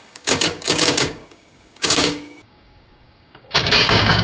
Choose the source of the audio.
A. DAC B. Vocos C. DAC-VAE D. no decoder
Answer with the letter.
A